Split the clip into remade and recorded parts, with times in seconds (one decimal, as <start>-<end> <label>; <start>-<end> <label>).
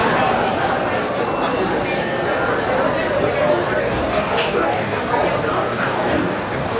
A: 0.0-3.8 recorded; 3.8-5.0 remade; 5.0-5.5 recorded; 5.5-6.8 remade